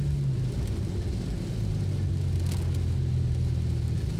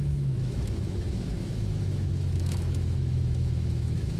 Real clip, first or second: first